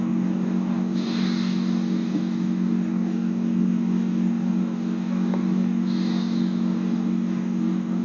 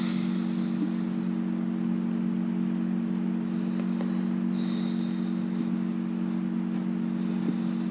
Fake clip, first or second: first